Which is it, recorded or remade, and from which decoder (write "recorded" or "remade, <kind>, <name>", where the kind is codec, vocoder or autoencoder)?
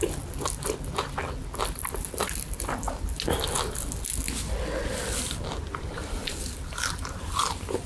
recorded